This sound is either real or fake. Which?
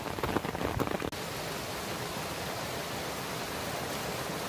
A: real